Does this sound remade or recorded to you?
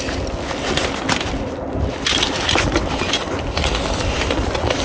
recorded